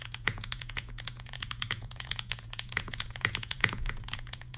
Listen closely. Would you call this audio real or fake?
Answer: fake